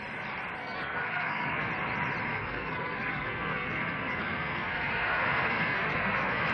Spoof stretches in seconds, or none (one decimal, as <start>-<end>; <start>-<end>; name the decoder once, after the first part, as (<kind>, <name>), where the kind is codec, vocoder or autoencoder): 0.6-1.7 (codec, SNAC); 2.3-6.5